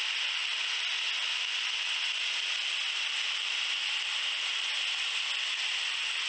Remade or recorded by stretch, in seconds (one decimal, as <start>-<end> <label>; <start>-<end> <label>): 0.0-6.3 recorded